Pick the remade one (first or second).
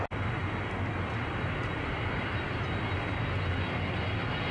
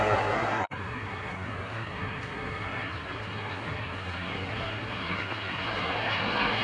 second